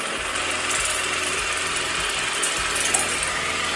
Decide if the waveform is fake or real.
real